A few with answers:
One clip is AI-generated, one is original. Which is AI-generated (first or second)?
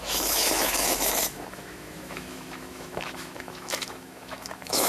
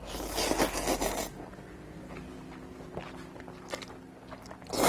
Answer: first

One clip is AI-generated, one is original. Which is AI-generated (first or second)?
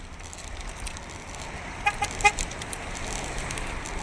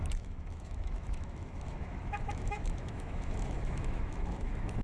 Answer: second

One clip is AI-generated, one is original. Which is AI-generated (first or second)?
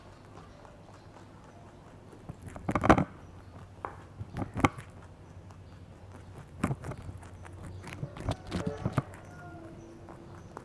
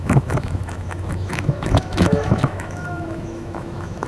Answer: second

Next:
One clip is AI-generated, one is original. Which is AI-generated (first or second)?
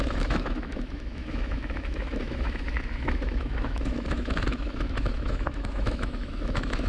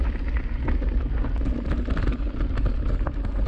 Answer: first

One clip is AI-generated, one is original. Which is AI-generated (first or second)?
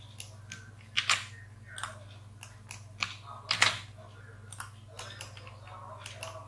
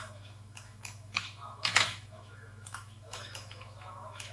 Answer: second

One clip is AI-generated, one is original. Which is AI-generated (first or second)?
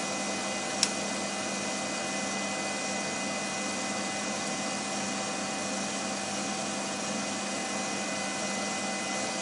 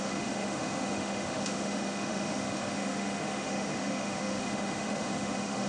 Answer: second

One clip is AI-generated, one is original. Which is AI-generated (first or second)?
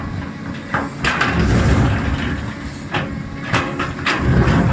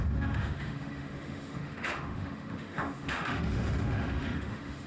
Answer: second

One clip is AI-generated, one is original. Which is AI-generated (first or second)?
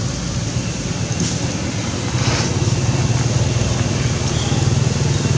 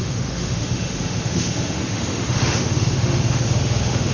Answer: second